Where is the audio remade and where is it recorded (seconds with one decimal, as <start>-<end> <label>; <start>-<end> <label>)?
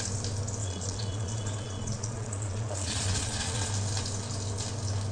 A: 0.0-0.6 recorded; 0.6-3.7 remade; 3.7-5.1 recorded